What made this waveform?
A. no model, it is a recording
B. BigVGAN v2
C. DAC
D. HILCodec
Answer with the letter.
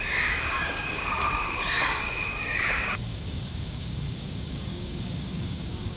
C